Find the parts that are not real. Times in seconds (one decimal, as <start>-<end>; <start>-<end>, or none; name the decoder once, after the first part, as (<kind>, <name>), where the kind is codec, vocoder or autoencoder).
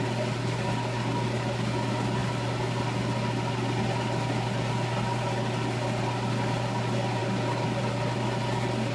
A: none